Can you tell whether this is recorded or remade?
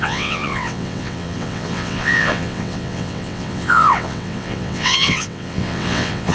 remade